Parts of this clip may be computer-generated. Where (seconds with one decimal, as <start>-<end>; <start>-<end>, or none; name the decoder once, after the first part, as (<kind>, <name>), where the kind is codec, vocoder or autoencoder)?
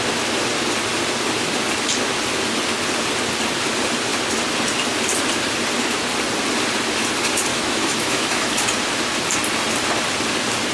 7.5-8.5 (autoencoder, DAC-VAE)